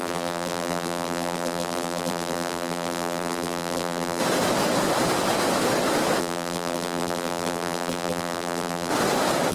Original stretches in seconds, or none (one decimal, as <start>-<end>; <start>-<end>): 4.2-6.2; 8.9-9.5